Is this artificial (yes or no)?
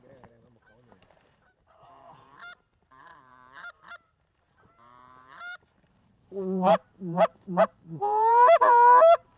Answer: yes